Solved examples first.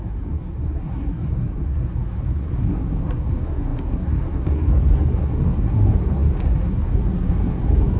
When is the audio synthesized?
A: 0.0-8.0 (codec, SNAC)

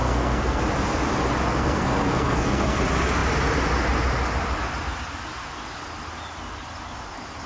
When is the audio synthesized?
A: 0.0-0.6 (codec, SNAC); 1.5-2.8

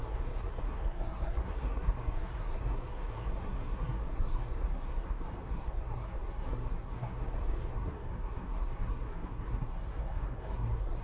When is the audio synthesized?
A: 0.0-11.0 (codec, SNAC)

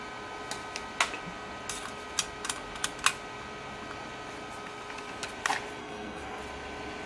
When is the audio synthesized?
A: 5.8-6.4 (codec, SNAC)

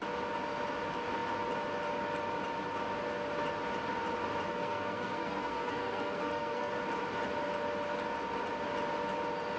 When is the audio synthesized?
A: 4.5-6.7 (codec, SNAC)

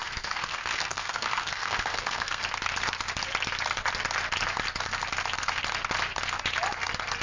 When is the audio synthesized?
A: 0.0-2.4 (codec, SNAC)

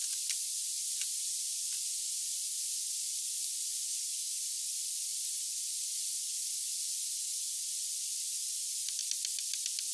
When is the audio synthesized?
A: none

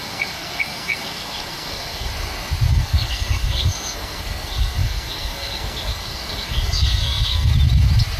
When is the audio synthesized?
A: 0.0-2.1 (codec, SNAC); 2.7-7.5